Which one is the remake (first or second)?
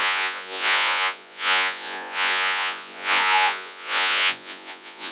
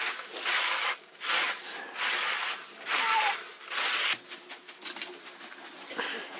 first